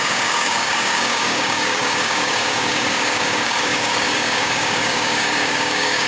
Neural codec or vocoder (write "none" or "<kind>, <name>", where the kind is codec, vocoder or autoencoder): codec, DAC